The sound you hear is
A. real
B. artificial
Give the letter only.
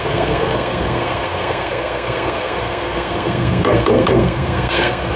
B